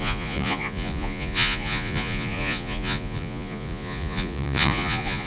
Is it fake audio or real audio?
fake